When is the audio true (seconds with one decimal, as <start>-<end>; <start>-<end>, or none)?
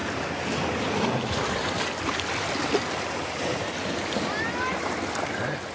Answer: 0.0-5.7